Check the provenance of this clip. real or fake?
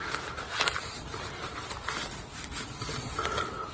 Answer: real